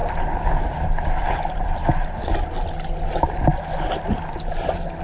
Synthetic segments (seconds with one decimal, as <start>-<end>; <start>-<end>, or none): none